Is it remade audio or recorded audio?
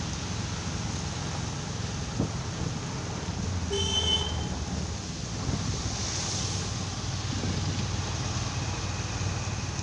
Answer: recorded